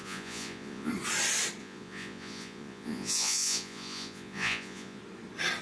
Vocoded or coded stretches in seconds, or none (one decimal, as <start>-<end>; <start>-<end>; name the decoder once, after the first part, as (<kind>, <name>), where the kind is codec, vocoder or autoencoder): 0.0-0.9 (vocoder, Vocos); 1.6-5.0